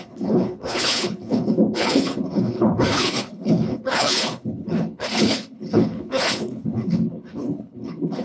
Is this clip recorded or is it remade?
remade